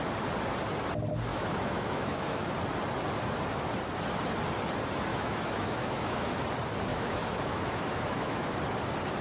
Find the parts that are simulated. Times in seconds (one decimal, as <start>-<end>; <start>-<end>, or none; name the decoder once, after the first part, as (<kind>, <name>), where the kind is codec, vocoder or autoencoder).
1.3-2.5 (autoencoder, DAC-VAE); 5.1-6.3; 6.9-8.5